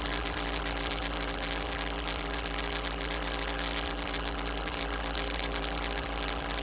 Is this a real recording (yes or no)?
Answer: no